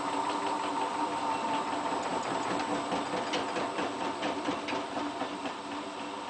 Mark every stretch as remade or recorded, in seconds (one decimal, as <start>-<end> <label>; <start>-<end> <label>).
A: 0.0-2.1 remade; 2.1-4.4 recorded; 4.4-6.3 remade